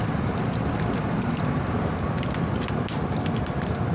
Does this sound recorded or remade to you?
recorded